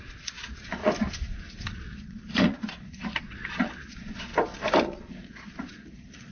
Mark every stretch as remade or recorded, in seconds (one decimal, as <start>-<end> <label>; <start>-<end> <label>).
0.0-0.8 remade; 0.8-1.5 recorded; 1.5-4.3 remade; 4.3-4.8 recorded; 4.8-6.3 remade